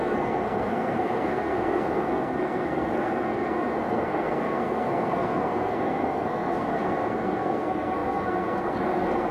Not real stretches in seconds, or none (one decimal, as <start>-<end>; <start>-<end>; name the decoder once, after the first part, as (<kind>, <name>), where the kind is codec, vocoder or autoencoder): 0.0-9.3 (codec, SNAC)